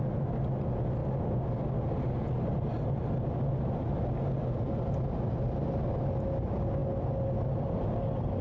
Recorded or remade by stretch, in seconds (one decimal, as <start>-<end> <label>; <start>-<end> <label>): 0.0-8.4 recorded